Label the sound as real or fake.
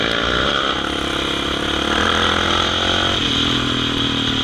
real